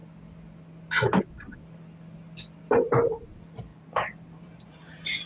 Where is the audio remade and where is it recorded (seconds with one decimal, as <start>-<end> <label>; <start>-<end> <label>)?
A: 0.0-3.7 recorded; 3.7-5.3 remade